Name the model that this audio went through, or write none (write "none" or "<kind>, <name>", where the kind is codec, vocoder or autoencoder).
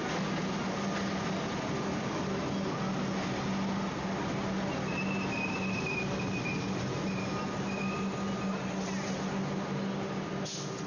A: none